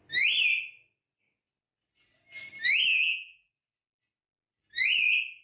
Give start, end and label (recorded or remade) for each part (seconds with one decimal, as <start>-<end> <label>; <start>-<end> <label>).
0.0-2.9 recorded; 2.9-3.5 remade; 3.5-5.4 recorded